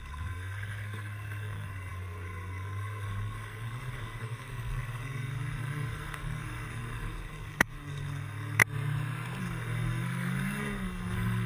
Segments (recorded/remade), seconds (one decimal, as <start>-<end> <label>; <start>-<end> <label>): 0.0-8.6 remade; 8.6-9.4 recorded; 9.4-11.5 remade